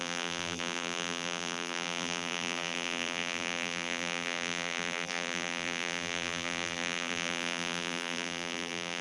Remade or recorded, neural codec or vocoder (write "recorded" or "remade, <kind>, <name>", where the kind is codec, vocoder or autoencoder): remade, vocoder, BigVGAN v2